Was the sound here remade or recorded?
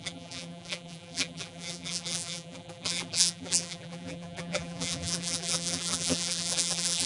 remade